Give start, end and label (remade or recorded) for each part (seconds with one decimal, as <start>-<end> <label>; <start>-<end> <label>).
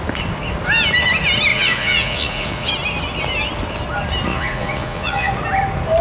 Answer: 0.0-1.5 recorded; 1.5-2.7 remade; 2.7-4.3 recorded; 4.3-5.3 remade; 5.3-6.0 recorded